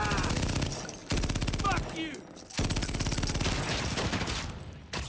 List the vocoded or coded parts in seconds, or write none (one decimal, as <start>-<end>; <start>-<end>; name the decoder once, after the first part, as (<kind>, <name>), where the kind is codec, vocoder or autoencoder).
none

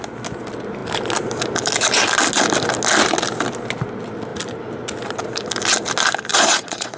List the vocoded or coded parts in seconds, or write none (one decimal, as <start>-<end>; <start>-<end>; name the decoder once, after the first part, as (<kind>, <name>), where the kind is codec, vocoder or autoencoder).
6.3-7.0 (vocoder, Vocos)

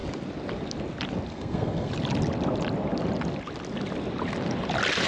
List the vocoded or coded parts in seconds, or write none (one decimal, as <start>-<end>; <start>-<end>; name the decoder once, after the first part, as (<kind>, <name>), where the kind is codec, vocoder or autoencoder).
1.3-1.9 (codec, SNAC)

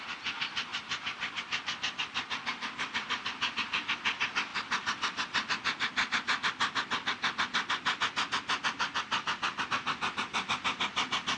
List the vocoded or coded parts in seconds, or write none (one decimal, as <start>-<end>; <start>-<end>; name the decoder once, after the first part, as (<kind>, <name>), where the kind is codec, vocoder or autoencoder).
none

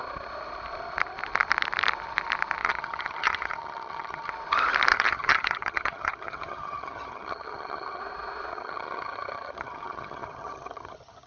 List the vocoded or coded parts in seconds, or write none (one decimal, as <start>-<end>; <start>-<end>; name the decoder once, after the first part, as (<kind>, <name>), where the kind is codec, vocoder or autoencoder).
2.6-4.3 (vocoder, HiFi-GAN); 4.9-8.0; 8.5-11.3

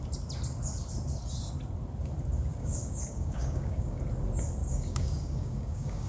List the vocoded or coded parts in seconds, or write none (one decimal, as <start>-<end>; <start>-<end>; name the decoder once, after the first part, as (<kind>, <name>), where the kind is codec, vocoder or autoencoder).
2.5-4.0 (codec, DAC); 4.6-6.1